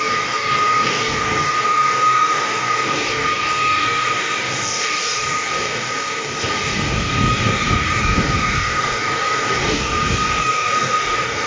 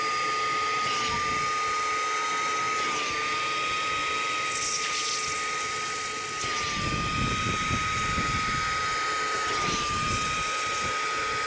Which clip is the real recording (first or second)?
second